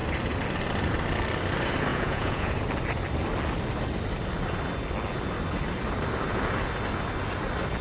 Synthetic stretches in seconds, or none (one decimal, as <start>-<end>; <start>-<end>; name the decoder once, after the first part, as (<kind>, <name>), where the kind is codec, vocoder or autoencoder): 1.9-2.5 (vocoder, Vocos)